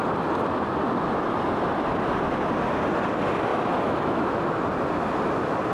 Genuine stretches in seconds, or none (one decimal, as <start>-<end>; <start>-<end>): 0.0-3.5; 4.4-5.7